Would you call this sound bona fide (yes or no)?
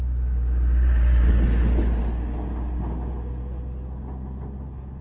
yes